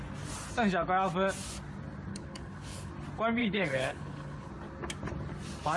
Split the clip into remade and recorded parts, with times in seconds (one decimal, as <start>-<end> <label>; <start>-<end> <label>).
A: 0.0-2.1 recorded; 2.1-2.9 remade; 2.9-3.4 recorded; 3.4-4.5 remade; 4.5-5.8 recorded